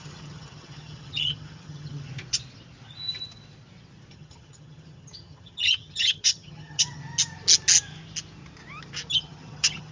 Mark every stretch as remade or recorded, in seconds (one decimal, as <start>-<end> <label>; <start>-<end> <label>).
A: 0.0-2.1 remade; 2.1-4.1 recorded; 4.1-7.0 remade; 7.0-9.1 recorded; 9.1-9.9 remade